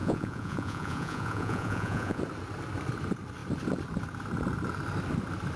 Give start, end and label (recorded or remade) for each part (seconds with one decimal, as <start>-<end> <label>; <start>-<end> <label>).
0.0-2.2 remade; 2.2-5.6 recorded